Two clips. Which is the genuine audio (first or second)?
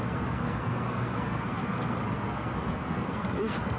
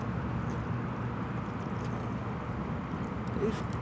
second